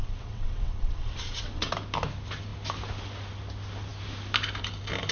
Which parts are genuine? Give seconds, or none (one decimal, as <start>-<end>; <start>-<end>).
1.7-5.1